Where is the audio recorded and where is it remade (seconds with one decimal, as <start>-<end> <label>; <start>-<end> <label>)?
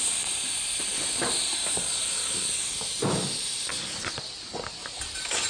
0.0-1.4 recorded; 1.4-3.7 remade; 3.7-4.8 recorded; 4.8-5.5 remade